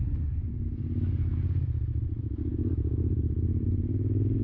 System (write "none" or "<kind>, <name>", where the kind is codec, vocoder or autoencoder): vocoder, BigVGAN v2